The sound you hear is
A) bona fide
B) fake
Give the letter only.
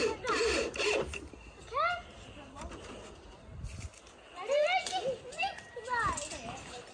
A